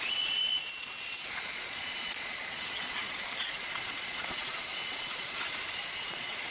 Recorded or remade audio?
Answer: remade